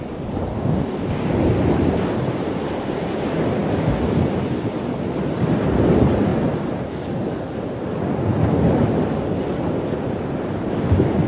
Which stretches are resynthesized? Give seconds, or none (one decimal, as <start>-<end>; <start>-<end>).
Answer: 0.5-1.1